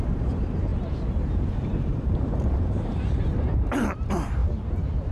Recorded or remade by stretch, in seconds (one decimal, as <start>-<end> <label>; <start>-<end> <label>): 0.0-4.4 remade; 4.4-5.1 recorded